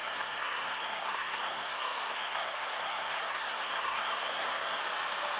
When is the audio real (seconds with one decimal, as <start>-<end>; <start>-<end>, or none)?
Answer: 4.8-5.4